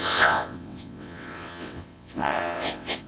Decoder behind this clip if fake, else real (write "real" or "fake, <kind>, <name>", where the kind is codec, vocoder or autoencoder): fake, vocoder, WaveNeXt